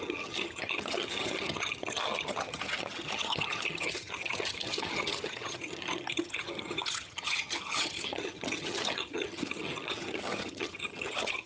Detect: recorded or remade remade